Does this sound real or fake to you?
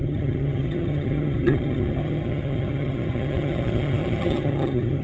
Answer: fake